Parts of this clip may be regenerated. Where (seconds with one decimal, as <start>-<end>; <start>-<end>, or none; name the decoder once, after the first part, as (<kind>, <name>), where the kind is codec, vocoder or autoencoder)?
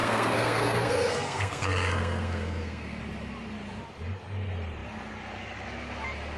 0.0-3.0 (codec, SNAC)